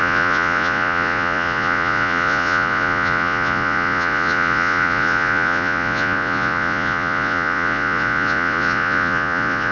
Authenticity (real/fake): fake